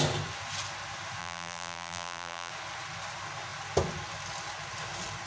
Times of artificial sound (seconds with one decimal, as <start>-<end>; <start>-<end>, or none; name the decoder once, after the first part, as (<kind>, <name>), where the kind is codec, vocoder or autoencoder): 1.2-2.5 (vocoder, BigVGAN v2)